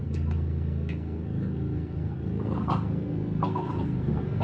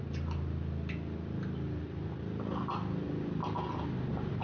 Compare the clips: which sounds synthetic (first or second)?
first